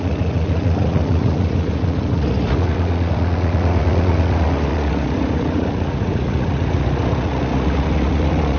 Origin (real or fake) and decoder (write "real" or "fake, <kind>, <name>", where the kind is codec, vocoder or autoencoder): fake, vocoder, Vocos